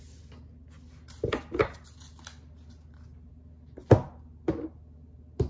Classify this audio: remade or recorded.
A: recorded